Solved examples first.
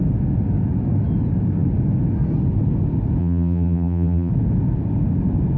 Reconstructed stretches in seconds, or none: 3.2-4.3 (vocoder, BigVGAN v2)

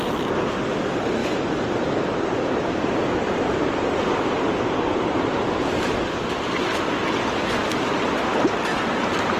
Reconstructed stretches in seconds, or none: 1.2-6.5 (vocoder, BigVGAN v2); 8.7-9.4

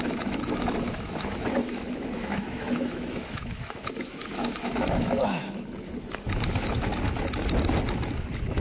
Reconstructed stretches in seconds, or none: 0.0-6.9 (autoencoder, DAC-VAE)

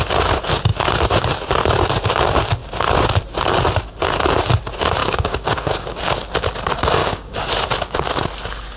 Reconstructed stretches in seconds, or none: 5.0-6.0 (codec, DAC); 7.0-7.5

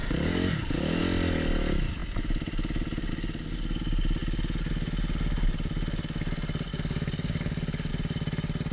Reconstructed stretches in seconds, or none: 0.0-1.0 (codec, DAC); 6.7-7.9

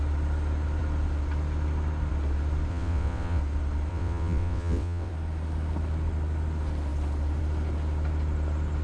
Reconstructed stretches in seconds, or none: 2.7-3.4 (vocoder, WaveNeXt); 3.9-5.1

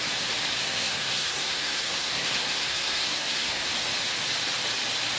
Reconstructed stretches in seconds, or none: 0.6-3.7 (codec, SNAC)